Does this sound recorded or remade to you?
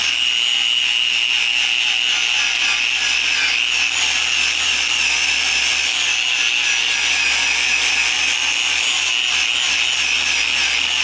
recorded